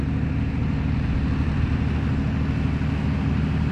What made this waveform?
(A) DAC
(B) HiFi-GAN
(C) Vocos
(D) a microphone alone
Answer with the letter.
D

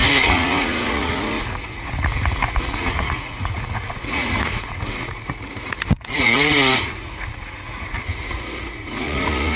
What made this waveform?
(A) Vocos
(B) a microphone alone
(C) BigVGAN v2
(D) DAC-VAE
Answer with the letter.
A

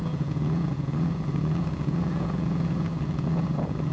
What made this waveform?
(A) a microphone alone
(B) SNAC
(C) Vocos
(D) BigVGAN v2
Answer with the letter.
C